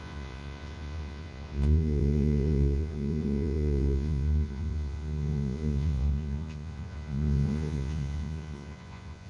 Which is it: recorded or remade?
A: remade